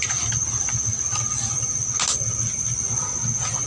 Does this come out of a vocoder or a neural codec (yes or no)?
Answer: no